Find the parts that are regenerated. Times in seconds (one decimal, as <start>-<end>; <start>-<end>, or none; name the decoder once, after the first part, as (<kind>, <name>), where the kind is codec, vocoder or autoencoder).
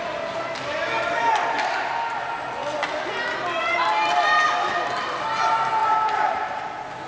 none